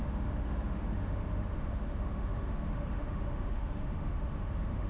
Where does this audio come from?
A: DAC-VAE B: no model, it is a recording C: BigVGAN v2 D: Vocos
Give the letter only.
A